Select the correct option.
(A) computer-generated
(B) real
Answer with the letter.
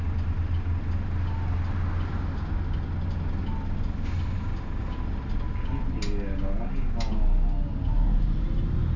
B